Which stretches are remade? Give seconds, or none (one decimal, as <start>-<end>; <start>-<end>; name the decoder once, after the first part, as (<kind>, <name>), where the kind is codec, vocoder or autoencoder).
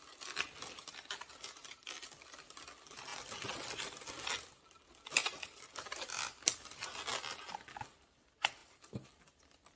3.1-4.1 (vocoder, BigVGAN v2); 5.2-5.9; 8.6-9.2